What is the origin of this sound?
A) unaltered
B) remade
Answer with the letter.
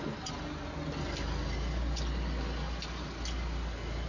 A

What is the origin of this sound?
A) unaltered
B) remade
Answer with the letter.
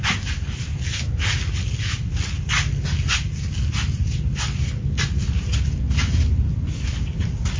A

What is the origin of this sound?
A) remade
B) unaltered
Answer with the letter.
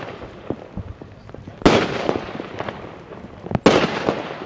B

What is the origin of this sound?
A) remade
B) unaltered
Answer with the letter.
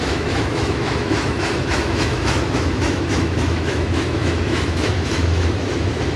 A